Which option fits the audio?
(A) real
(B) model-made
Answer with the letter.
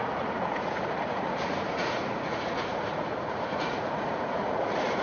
B